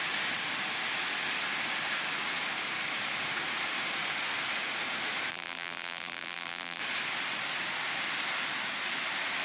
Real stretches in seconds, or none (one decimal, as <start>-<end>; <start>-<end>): 0.0-5.3; 6.8-9.4